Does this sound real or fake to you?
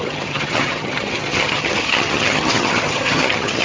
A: fake